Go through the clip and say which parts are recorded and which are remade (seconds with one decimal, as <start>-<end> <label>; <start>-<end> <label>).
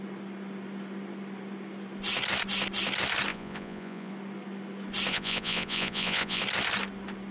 0.0-3.3 recorded; 3.3-4.1 remade; 4.1-5.1 recorded; 5.1-6.4 remade; 6.4-7.3 recorded